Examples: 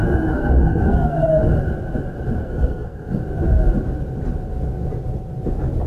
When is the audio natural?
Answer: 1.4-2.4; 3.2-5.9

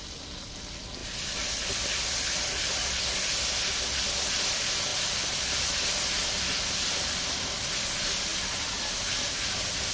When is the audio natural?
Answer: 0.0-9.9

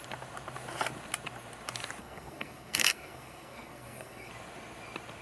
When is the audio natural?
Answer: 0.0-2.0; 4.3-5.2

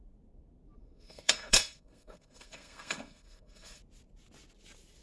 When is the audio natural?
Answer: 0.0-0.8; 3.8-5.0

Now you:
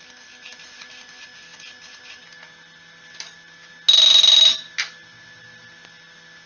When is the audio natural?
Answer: 0.0-6.5

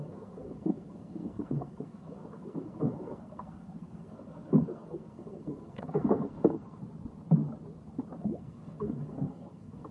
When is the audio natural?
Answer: 6.8-8.2